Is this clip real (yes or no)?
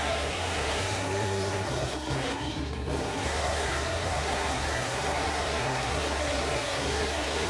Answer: no